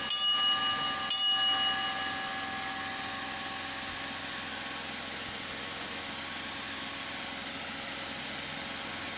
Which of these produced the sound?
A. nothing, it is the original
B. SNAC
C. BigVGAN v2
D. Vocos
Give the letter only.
A